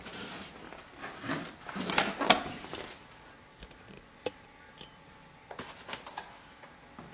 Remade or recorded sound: recorded